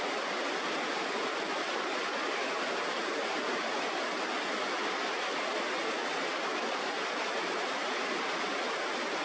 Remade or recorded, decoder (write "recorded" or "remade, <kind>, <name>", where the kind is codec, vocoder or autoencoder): recorded